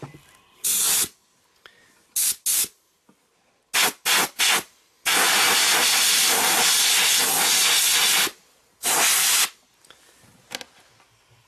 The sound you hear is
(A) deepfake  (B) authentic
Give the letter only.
B